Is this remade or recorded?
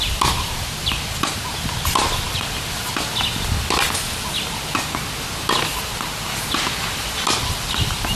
recorded